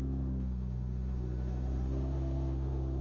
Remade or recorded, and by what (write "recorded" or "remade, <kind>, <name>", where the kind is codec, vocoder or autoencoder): remade, autoencoder, DAC-VAE